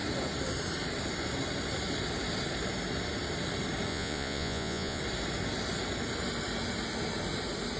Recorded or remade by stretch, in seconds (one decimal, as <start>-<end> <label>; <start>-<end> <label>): 0.0-3.9 recorded; 3.9-5.0 remade; 5.0-7.8 recorded